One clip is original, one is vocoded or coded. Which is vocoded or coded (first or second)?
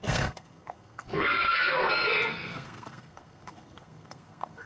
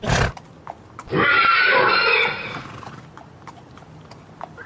first